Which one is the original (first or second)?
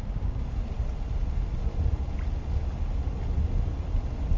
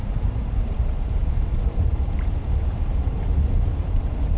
first